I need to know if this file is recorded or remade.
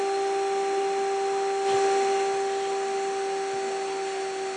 recorded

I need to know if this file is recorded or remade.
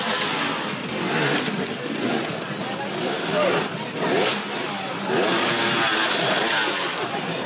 recorded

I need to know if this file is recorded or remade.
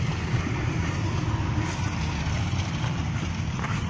recorded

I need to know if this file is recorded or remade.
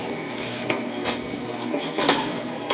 remade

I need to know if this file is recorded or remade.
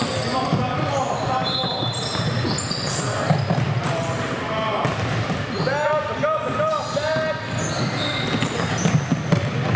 recorded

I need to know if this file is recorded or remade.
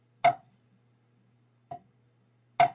recorded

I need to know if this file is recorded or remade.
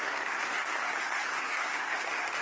remade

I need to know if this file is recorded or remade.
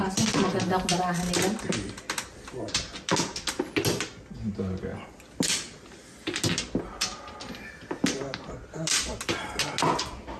recorded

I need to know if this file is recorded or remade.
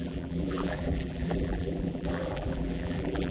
remade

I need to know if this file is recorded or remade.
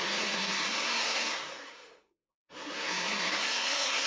remade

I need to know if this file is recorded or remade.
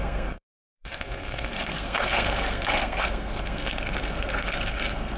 remade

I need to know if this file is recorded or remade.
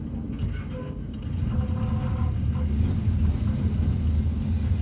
recorded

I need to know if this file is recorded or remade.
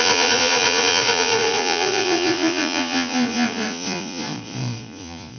remade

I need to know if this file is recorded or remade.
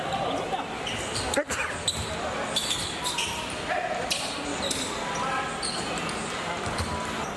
recorded